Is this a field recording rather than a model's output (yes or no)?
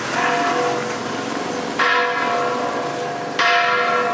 yes